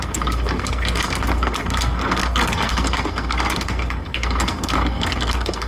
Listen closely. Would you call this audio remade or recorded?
remade